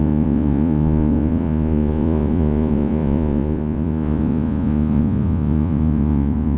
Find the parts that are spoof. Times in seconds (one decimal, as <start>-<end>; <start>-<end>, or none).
0.0-6.6